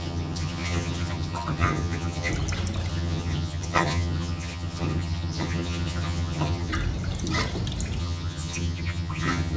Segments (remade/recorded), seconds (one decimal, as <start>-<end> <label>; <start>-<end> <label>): 0.0-2.3 remade; 2.3-2.9 recorded; 2.9-6.7 remade; 6.7-8.0 recorded; 8.0-9.6 remade